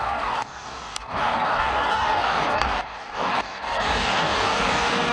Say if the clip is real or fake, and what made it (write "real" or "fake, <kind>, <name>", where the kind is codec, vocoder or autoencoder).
fake, codec, DAC